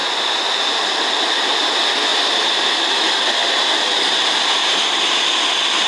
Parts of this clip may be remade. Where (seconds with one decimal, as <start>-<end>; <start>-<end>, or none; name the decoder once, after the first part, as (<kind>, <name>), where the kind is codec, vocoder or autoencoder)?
2.1-2.8 (vocoder, BigVGAN v2)